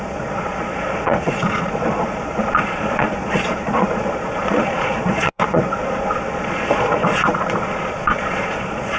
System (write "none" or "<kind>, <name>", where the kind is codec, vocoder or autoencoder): vocoder, Vocos